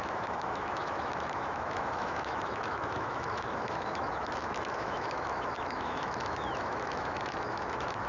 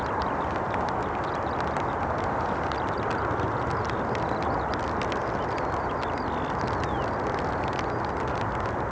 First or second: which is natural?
second